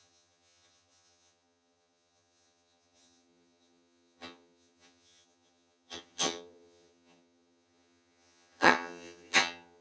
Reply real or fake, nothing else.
fake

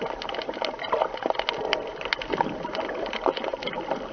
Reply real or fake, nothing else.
real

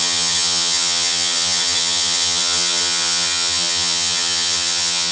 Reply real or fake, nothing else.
fake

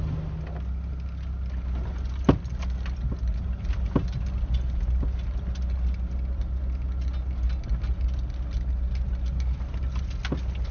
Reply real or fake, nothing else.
real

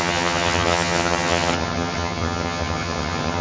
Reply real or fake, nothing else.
fake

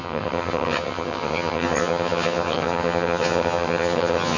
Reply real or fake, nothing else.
fake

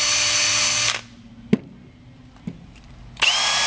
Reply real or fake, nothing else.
real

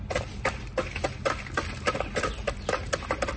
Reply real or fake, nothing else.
real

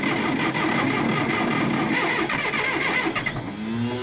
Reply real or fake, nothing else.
real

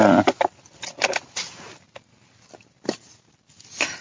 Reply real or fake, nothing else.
real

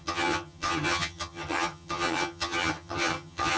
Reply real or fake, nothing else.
fake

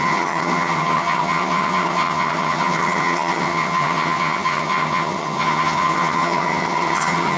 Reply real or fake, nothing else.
fake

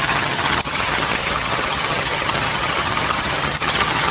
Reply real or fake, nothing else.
fake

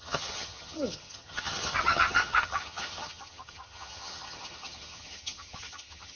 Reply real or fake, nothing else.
fake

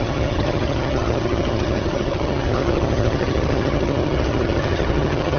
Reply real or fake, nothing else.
fake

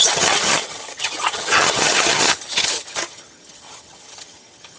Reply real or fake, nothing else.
fake